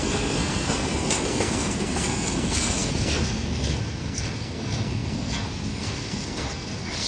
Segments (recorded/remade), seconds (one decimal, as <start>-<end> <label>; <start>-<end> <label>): 0.0-7.1 remade